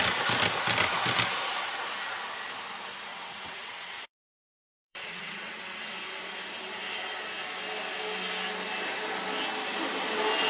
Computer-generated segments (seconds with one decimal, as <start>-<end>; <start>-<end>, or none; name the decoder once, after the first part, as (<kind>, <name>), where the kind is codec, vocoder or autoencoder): 3.1-5.9 (vocoder, WaveNeXt)